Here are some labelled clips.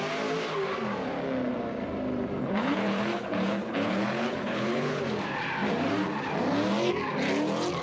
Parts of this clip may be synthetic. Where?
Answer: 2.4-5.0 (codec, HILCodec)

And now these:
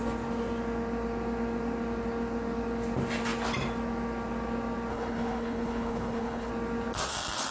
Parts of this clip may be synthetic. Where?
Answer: 4.9-6.5 (codec, HILCodec)